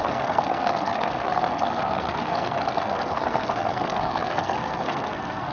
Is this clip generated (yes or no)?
yes